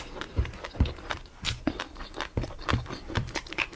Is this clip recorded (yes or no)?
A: no